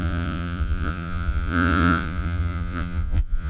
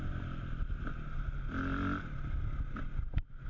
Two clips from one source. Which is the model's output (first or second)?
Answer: first